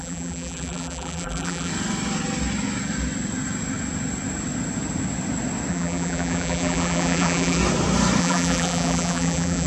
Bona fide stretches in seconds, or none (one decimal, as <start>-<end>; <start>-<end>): 1.7-5.7; 7.6-8.2